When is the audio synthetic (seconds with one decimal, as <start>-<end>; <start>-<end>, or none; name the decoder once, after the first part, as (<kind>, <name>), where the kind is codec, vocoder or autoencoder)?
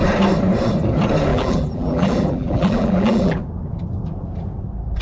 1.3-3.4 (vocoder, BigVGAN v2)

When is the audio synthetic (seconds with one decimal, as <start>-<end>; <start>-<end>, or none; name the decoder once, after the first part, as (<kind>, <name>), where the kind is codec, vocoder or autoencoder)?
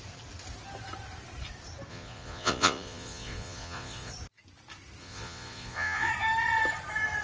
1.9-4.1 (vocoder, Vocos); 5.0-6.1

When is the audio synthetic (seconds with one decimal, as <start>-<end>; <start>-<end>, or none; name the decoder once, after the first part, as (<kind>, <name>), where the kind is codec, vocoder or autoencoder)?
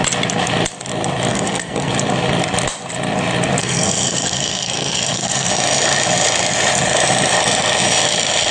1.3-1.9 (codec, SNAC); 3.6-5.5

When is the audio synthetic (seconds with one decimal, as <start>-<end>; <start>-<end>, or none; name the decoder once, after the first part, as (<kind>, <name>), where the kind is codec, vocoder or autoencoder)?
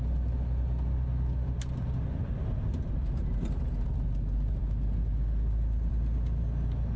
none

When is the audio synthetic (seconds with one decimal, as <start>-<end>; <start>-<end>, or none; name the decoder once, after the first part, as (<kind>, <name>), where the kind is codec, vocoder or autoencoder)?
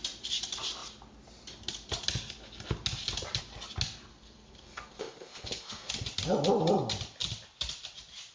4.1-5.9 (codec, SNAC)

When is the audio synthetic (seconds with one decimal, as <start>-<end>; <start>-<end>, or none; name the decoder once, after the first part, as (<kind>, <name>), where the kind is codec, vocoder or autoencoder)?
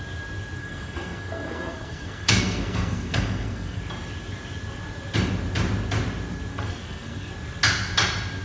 0.6-3.8 (codec, SNAC); 6.5-7.3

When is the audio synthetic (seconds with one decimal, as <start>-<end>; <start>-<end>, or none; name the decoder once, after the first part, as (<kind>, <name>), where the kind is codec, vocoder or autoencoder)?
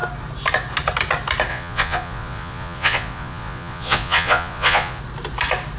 1.5-5.0 (vocoder, Vocos)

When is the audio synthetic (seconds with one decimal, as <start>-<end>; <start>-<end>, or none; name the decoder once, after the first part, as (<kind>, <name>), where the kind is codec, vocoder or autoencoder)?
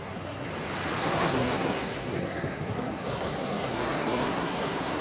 0.0-0.5 (codec, SNAC); 1.0-5.0